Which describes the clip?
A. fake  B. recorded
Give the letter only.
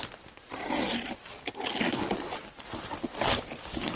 B